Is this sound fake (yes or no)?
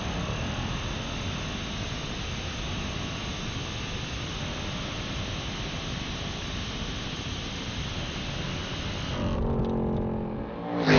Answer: no